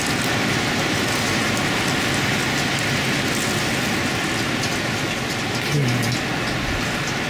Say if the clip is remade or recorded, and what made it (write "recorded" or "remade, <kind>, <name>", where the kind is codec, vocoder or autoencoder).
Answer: recorded